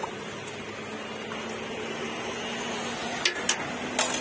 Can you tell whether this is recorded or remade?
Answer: recorded